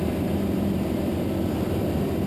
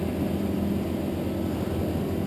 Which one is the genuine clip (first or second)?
second